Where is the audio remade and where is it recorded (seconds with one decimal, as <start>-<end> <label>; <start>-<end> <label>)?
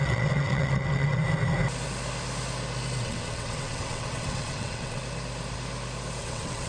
0.0-1.2 remade; 1.2-3.0 recorded; 3.0-5.0 remade; 5.0-6.2 recorded; 6.2-6.7 remade